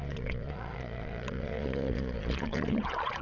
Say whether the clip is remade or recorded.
remade